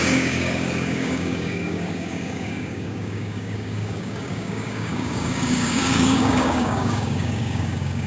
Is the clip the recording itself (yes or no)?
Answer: no